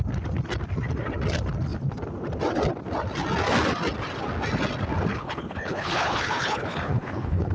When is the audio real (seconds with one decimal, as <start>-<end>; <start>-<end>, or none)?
0.0-5.1